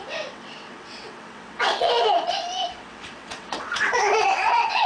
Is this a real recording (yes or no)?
no